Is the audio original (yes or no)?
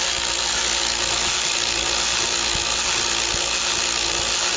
yes